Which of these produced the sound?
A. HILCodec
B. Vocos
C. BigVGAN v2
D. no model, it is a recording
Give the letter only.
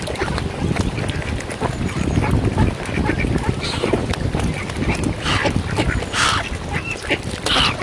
D